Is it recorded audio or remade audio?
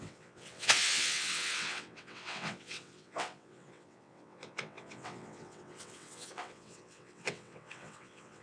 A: remade